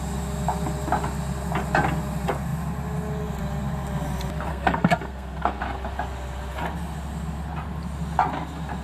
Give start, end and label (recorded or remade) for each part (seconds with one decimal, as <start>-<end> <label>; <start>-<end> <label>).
0.0-4.5 recorded; 4.5-5.6 remade; 5.6-8.8 recorded

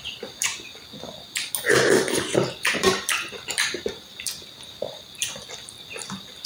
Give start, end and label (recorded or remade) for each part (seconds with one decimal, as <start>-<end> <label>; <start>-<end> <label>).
0.0-0.5 remade; 0.5-2.5 recorded; 2.5-6.5 remade